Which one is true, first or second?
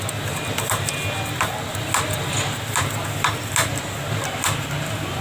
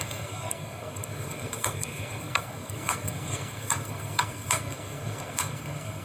first